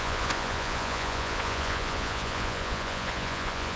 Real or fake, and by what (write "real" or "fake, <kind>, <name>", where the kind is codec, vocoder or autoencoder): fake, vocoder, Vocos